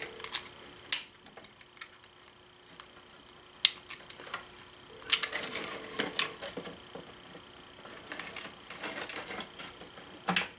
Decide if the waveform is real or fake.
real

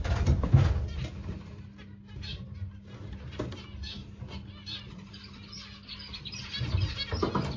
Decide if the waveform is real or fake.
real